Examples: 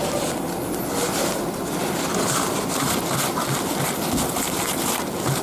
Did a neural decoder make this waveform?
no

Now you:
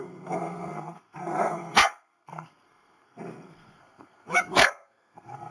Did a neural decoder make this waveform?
yes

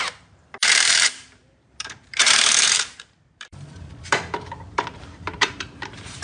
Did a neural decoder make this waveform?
yes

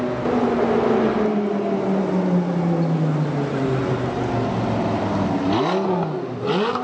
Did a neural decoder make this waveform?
no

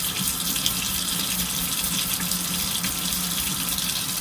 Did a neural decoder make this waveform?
no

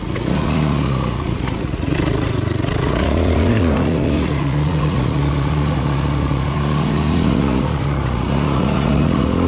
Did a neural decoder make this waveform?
yes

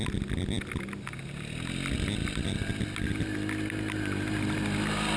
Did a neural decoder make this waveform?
no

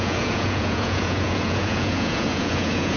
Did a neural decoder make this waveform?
yes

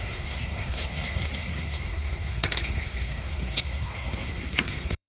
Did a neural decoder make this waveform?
yes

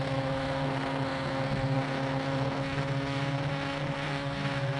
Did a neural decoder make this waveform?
yes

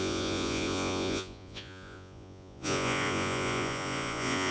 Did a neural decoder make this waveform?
yes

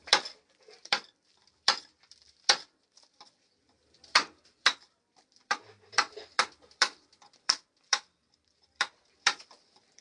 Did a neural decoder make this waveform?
yes